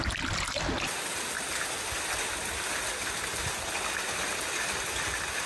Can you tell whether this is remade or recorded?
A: recorded